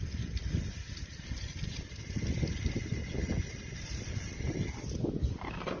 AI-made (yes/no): no